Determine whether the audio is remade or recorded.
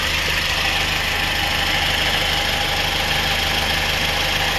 recorded